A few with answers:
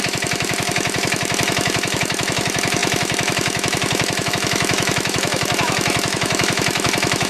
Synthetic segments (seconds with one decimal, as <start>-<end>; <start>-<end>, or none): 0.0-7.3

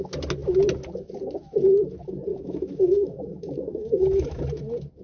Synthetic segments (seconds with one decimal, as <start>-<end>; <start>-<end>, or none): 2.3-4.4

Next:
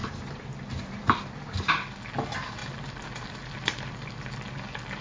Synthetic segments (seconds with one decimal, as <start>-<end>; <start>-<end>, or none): none

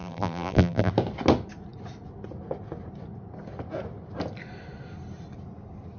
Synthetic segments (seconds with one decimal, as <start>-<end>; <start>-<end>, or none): 0.0-0.9

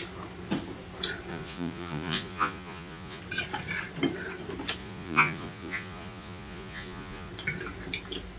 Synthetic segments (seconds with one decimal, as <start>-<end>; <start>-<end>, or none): 1.3-3.2; 4.8-7.3